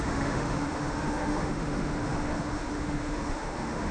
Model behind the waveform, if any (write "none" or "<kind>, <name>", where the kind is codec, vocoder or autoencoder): autoencoder, DAC-VAE